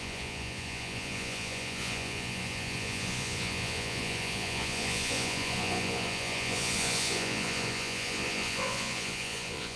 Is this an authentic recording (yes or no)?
no